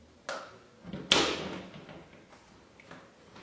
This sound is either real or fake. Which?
real